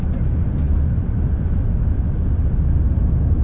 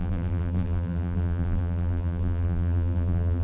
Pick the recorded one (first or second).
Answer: first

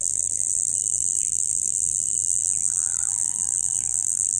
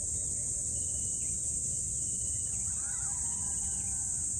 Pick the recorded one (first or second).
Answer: second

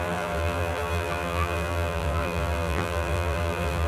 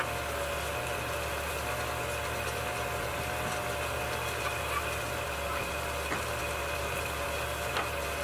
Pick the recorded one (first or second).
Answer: second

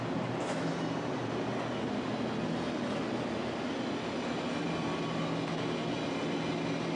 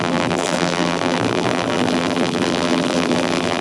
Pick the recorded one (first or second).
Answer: first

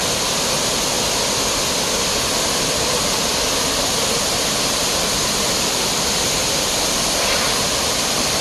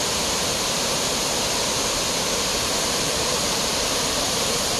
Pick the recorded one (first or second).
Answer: first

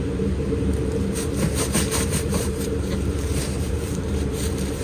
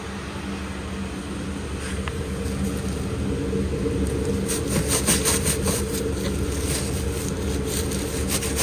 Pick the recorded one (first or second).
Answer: second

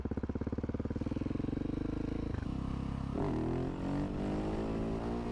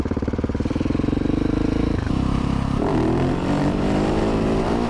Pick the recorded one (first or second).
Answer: first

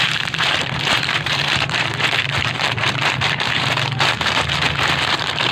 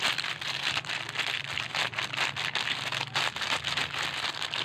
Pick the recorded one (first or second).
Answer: second